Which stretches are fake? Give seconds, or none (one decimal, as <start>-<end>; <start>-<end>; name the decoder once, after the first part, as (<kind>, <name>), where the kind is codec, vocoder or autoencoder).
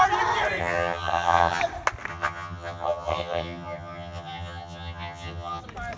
0.6-1.6 (vocoder, HiFi-GAN); 2.1-5.6